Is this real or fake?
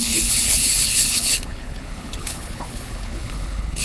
fake